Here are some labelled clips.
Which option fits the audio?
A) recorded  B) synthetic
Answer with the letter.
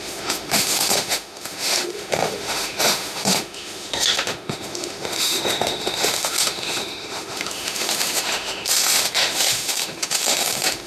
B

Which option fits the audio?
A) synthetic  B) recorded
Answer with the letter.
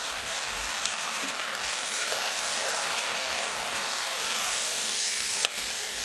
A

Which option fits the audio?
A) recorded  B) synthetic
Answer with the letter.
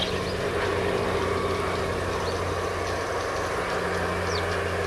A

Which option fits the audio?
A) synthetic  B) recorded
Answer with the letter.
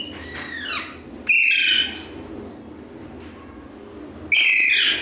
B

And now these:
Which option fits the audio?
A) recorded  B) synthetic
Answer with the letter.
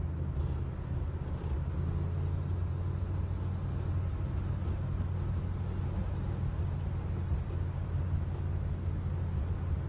A